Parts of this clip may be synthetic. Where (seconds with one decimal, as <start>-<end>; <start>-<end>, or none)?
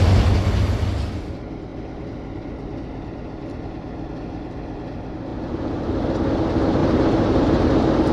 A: 5.3-6.0; 6.8-8.1